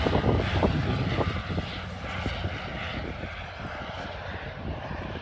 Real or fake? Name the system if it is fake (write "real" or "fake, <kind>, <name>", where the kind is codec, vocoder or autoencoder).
real